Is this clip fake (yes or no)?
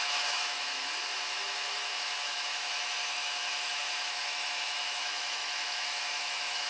yes